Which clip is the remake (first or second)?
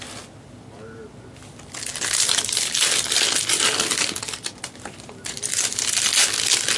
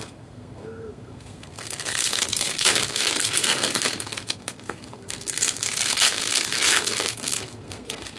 second